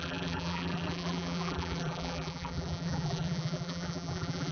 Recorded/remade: remade